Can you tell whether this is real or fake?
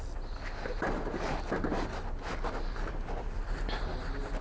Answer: real